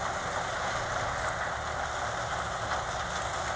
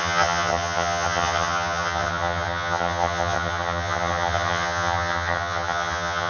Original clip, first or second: first